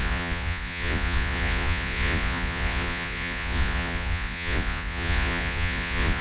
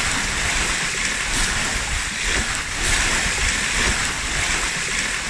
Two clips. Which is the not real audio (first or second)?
first